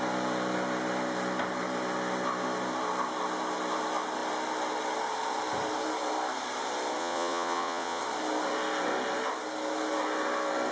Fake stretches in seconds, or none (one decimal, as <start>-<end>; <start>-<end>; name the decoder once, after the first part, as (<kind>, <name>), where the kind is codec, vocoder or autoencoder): 7.0-8.0 (vocoder, Vocos)